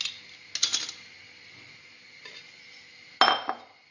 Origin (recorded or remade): recorded